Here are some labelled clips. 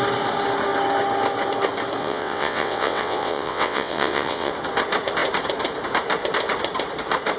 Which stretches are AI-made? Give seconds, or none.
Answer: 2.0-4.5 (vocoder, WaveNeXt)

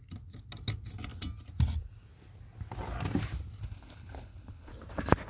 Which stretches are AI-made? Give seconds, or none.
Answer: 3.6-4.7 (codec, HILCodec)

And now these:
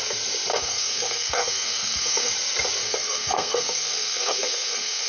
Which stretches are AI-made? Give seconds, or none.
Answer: 0.5-2.3 (codec, SNAC); 2.8-5.1

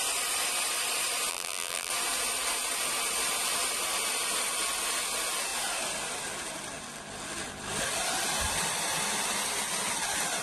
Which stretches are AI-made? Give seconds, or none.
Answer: 1.3-1.9 (vocoder, BigVGAN v2)

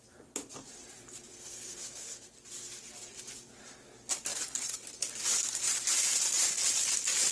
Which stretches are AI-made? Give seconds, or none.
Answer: 1.3-2.3 (codec, SNAC)

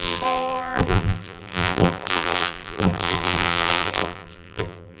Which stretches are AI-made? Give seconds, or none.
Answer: 0.0-5.0 (vocoder, BigVGAN v2)